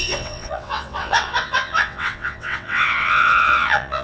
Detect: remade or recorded remade